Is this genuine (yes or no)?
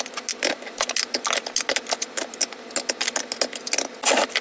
yes